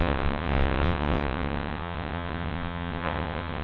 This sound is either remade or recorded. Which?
remade